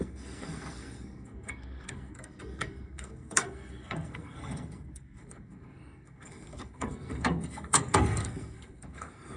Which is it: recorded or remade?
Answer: remade